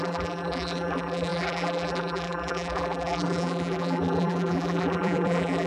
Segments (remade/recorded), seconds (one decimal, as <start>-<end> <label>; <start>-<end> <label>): 0.0-5.7 remade